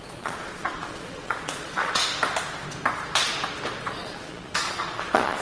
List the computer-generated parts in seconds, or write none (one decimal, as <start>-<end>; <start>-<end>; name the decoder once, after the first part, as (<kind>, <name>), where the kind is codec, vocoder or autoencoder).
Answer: 0.0-2.0 (vocoder, Vocos); 3.8-5.4